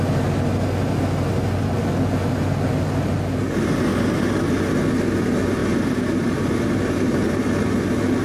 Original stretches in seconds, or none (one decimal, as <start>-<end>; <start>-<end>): 0.0-3.9; 4.5-5.6